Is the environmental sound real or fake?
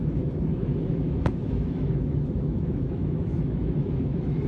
fake